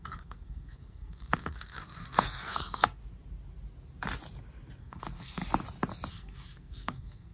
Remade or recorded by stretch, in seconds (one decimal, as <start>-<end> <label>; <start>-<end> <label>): 0.0-3.0 remade; 3.0-4.8 recorded; 4.8-5.4 remade; 5.4-6.1 recorded; 6.1-7.3 remade

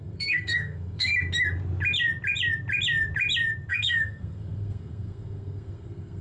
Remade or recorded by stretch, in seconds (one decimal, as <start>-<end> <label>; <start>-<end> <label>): 0.0-1.1 remade; 1.1-3.7 recorded; 3.7-6.2 remade

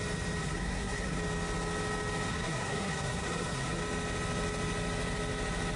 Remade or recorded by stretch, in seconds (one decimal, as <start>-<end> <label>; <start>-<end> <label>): 0.0-0.4 recorded; 0.4-1.2 remade; 1.2-2.3 recorded; 2.3-3.8 remade; 3.8-5.8 recorded

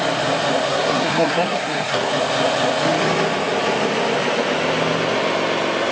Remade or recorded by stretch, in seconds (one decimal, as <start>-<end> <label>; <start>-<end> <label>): 0.0-0.7 recorded; 0.7-2.1 remade; 2.1-5.9 recorded